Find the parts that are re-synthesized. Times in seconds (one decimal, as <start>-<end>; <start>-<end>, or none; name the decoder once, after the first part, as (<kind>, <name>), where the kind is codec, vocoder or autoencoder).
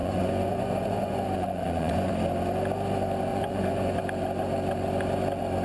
0.0-2.1 (vocoder, Vocos); 3.3-4.0